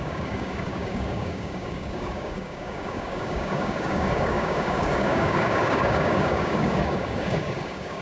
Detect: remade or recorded remade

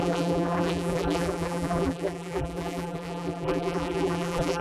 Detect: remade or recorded remade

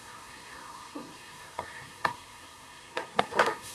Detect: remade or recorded remade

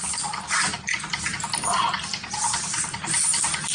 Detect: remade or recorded recorded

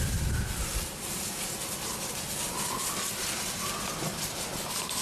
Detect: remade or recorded recorded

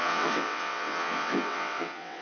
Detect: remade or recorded remade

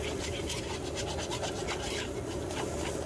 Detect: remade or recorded recorded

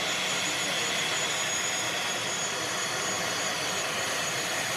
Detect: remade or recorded recorded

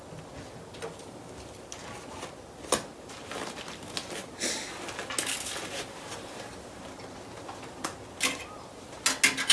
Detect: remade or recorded recorded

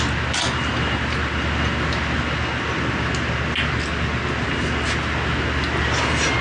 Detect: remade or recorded recorded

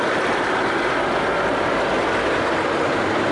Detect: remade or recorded recorded